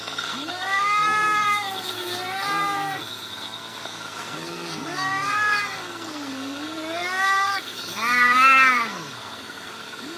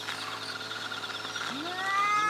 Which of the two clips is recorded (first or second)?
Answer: second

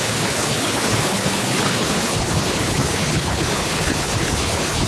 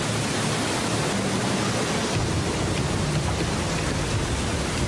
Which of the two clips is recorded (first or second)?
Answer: second